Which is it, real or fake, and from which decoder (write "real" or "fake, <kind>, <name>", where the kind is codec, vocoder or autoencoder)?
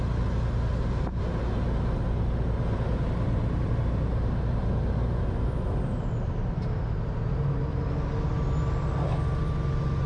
real